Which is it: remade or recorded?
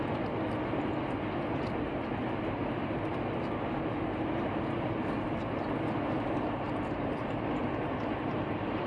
recorded